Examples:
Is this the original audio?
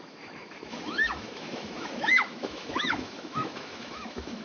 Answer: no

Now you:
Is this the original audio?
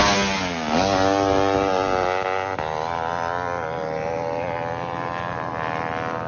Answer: yes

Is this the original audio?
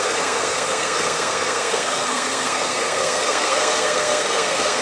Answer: no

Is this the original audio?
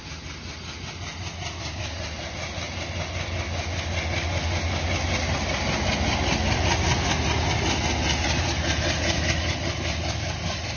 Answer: yes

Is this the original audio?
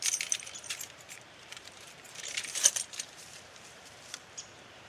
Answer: no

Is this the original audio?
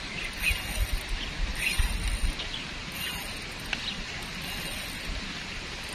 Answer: yes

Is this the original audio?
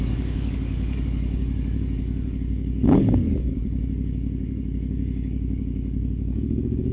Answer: no